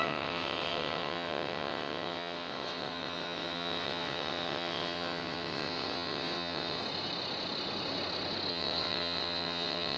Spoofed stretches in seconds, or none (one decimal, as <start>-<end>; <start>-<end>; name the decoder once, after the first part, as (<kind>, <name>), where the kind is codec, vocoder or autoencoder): 0.0-6.8 (vocoder, WaveNeXt); 8.5-10.0